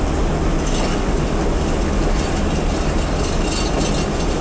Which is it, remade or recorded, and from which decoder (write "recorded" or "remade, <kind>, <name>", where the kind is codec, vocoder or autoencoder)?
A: recorded